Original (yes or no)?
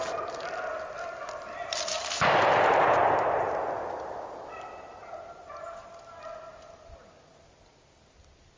yes